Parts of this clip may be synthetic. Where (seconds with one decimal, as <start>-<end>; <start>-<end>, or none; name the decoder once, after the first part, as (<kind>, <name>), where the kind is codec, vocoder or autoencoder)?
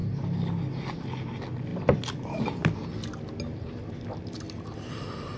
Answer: none